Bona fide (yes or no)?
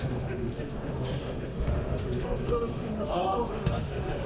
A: no